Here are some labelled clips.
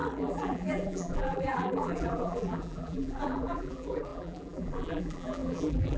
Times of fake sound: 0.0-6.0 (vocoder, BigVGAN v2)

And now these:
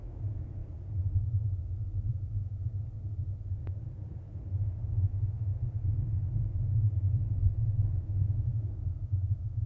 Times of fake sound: 0.0-0.6 (autoencoder, DAC-VAE); 2.1-2.6; 4.9-5.5; 7.3-9.7

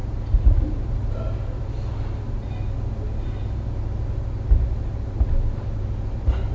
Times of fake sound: none